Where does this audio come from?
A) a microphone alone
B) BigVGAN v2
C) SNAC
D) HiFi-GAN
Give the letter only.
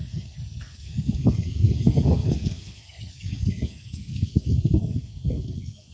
C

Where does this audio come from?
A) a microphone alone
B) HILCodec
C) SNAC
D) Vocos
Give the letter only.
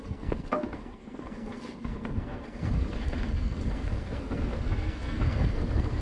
C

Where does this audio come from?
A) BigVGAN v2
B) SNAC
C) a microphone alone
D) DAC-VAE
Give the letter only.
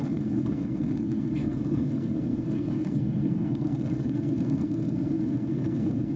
B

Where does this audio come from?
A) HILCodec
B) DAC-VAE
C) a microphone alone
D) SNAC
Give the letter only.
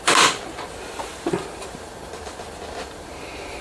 C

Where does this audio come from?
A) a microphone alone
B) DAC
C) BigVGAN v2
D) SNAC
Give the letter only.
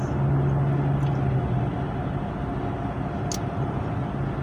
A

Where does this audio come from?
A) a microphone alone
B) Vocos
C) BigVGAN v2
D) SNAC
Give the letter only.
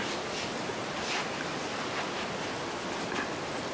A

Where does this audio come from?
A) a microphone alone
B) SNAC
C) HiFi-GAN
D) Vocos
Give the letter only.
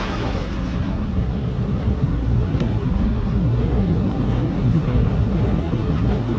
B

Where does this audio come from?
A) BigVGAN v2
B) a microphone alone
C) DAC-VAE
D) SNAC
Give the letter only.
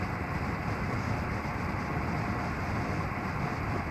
B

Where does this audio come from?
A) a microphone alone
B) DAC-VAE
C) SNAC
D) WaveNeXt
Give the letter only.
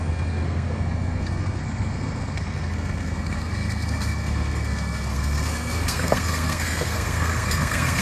C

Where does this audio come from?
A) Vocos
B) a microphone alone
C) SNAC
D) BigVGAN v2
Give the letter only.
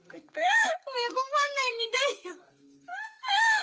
C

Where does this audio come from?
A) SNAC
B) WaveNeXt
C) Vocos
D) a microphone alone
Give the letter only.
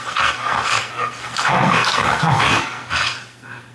A